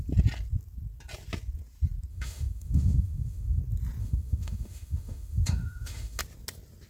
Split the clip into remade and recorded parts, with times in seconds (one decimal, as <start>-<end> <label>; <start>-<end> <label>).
0.0-2.1 recorded; 2.1-3.6 remade; 3.6-4.0 recorded; 4.0-6.2 remade; 6.2-6.9 recorded